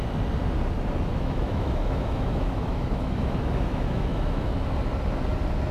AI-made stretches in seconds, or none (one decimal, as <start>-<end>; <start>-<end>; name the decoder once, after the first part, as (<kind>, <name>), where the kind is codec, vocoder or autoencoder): 1.1-4.5 (autoencoder, DAC-VAE)